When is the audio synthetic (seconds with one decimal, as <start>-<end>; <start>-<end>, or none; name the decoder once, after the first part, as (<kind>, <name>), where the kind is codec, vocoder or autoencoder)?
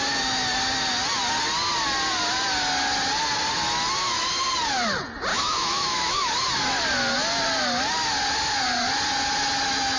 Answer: 5.3-6.3 (autoencoder, DAC-VAE)